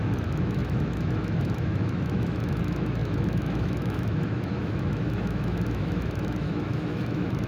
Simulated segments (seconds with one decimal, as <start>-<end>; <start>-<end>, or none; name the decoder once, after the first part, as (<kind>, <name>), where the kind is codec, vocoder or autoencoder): 0.0-7.5 (autoencoder, DAC-VAE)